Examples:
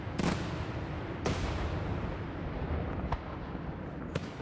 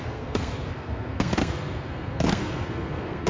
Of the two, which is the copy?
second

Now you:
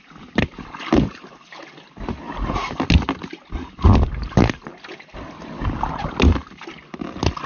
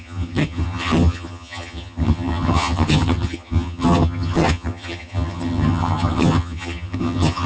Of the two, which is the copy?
second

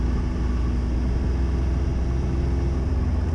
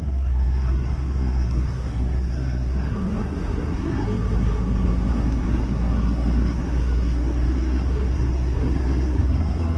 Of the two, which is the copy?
second